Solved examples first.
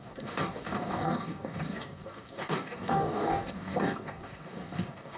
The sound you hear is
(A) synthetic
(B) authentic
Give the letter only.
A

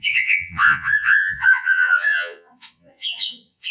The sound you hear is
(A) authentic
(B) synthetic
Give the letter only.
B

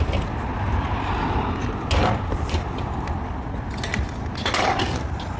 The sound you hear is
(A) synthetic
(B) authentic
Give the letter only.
B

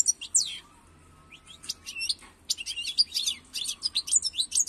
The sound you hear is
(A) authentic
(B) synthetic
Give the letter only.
A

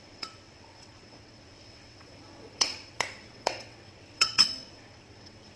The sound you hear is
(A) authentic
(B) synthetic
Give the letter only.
B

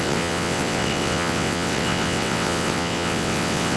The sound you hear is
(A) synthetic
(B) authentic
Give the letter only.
A